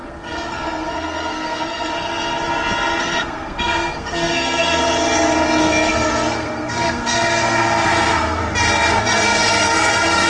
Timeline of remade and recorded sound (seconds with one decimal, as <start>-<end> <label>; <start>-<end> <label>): 0.0-1.9 remade; 1.9-3.0 recorded; 3.0-4.8 remade; 4.8-5.6 recorded; 5.6-8.4 remade; 8.4-9.0 recorded; 9.0-10.3 remade